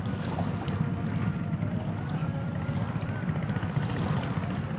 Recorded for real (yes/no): yes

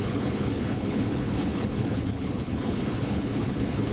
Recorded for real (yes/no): no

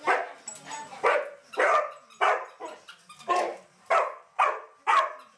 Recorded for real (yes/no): yes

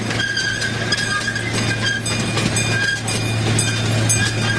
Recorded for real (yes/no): yes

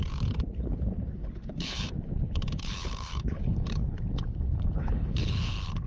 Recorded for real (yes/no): no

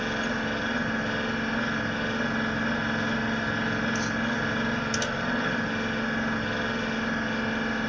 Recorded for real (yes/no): yes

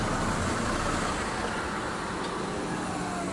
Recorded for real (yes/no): yes